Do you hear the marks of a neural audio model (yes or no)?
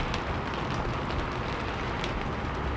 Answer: no